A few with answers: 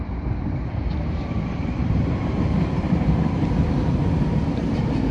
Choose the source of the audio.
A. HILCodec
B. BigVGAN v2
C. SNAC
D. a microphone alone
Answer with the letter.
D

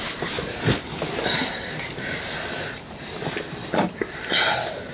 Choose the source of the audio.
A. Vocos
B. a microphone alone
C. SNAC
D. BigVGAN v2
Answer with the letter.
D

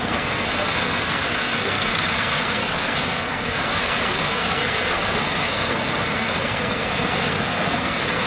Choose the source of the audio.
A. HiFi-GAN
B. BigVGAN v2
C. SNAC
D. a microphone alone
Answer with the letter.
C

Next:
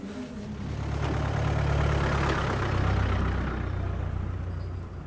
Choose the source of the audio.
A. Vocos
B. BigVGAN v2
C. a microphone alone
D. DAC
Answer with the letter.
C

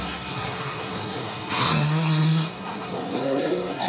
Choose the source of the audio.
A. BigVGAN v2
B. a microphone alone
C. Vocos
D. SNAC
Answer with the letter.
D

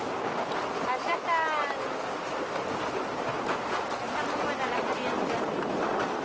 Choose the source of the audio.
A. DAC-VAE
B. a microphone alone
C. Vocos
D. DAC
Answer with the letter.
B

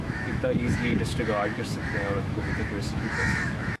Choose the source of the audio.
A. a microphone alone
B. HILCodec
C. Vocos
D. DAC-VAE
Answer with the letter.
D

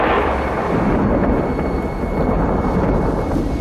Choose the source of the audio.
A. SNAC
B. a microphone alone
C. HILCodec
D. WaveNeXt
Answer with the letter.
B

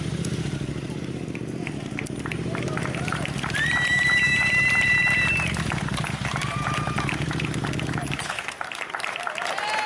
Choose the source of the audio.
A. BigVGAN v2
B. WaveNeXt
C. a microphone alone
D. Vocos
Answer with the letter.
A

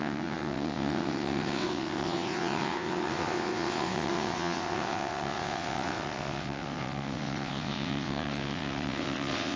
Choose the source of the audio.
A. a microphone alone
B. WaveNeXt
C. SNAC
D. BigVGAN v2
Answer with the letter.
B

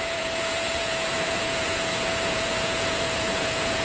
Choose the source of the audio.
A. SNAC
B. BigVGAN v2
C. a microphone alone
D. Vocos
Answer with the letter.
D